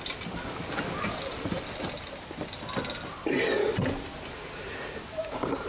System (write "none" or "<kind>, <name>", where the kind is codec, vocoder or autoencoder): none